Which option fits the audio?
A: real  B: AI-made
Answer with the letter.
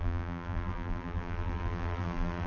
B